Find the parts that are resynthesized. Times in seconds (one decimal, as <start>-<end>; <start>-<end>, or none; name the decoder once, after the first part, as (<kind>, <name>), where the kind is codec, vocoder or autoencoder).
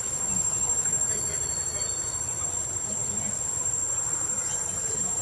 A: none